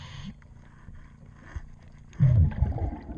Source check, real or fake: real